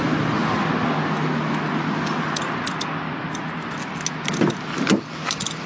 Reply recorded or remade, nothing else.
recorded